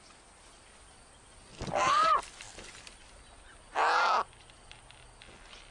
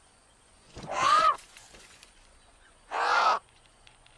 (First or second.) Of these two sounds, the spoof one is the second